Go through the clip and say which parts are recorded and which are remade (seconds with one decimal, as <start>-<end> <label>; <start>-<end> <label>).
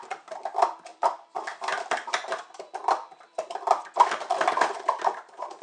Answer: 0.0-0.9 recorded; 0.9-4.3 remade; 4.3-5.6 recorded